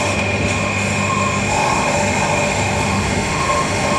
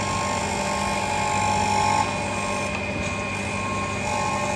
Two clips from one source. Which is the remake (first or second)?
first